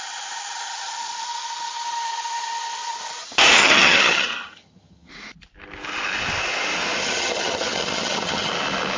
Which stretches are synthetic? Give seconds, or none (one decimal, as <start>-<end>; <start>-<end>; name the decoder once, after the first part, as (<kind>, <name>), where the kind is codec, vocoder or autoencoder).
3.6-5.1 (vocoder, HiFi-GAN); 7.0-8.5

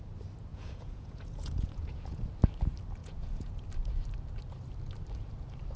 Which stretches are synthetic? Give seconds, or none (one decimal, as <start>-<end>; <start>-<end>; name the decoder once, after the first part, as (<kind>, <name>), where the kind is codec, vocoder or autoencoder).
0.5-2.2 (vocoder, Vocos); 3.0-3.5

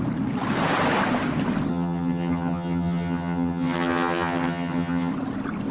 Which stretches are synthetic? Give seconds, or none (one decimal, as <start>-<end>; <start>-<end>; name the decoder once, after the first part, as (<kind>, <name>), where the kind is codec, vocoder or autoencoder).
1.7-5.1 (vocoder, HiFi-GAN)

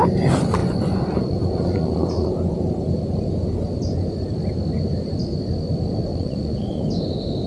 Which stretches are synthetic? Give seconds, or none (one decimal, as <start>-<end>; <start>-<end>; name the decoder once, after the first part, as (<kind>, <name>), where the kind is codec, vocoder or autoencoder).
0.6-2.3 (vocoder, Vocos); 6.1-6.8

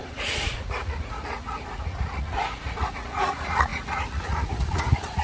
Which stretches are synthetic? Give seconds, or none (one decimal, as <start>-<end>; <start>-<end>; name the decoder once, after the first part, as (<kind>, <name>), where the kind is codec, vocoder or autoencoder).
0.0-5.2 (vocoder, Vocos)

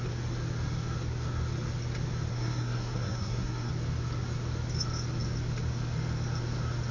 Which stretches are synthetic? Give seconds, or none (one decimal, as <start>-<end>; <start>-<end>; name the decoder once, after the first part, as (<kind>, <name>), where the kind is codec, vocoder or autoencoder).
2.3-3.7 (codec, SNAC)